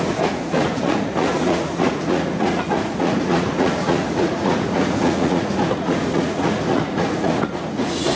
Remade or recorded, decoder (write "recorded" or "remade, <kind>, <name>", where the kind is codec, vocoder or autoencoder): remade, vocoder, Vocos